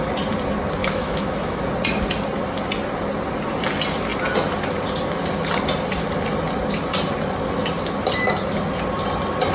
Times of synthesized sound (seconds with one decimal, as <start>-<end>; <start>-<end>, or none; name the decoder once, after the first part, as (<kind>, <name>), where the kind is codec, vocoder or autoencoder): 0.8-1.6 (autoencoder, DAC-VAE)